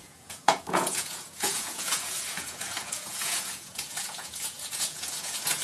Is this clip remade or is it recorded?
remade